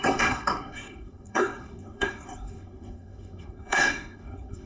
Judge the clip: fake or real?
fake